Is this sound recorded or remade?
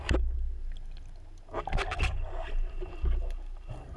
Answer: recorded